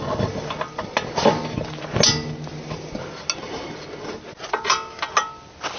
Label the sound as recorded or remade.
recorded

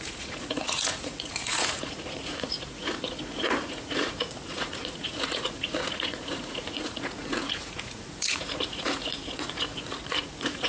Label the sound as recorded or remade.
remade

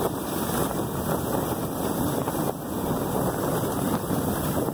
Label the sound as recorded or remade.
recorded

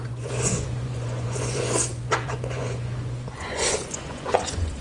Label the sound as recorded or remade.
remade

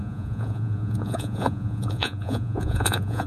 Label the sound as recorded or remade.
remade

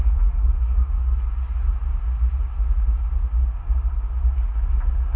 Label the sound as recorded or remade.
recorded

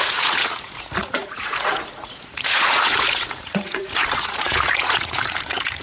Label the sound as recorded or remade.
remade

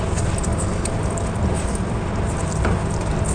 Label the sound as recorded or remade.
recorded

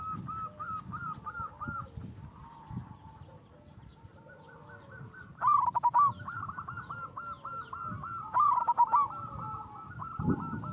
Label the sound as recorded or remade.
recorded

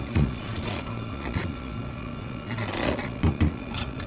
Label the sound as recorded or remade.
remade